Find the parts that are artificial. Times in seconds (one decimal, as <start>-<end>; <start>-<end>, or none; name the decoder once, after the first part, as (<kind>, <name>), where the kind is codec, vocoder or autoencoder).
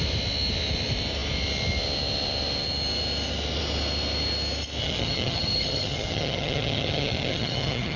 4.8-8.0 (vocoder, HiFi-GAN)